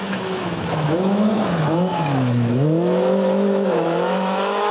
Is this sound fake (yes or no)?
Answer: yes